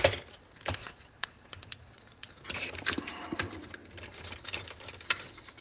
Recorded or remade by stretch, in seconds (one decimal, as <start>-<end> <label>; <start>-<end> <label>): 0.0-0.8 recorded; 0.8-2.3 remade; 2.3-5.6 recorded